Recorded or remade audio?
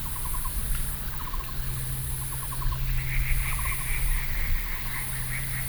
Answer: recorded